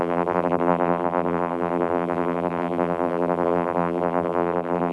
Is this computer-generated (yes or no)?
yes